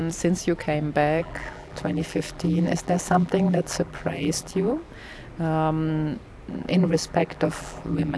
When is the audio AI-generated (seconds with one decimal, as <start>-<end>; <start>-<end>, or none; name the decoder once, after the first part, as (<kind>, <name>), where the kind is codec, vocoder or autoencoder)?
1.2-4.8 (vocoder, BigVGAN v2); 6.5-8.2